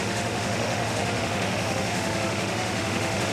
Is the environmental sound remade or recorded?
remade